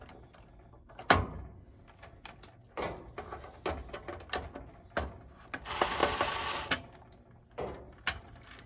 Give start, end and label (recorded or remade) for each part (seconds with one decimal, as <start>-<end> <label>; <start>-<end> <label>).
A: 0.0-8.7 recorded